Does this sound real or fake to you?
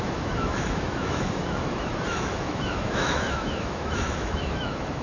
fake